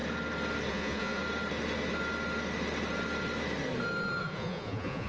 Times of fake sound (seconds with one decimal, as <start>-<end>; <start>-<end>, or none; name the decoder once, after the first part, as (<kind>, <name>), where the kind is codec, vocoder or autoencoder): 0.7-1.2 (vocoder, Vocos); 4.2-5.1

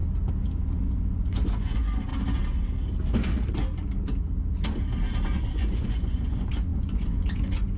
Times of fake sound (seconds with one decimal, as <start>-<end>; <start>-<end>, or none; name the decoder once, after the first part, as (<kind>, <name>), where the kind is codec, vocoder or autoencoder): 0.8-2.1 (vocoder, Vocos); 5.4-7.8

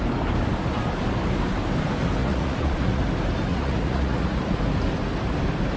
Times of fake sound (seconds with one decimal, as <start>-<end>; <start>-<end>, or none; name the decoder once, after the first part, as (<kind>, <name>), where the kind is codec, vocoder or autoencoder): 2.2-3.0 (vocoder, Vocos); 3.5-4.6

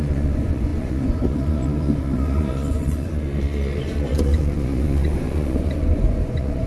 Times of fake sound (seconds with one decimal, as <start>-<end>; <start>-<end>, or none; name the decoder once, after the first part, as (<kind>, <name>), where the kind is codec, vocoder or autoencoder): 0.0-6.7 (vocoder, Vocos)